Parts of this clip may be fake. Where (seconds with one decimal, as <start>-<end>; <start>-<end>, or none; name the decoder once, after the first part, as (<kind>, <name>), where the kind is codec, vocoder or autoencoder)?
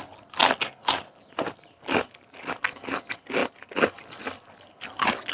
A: none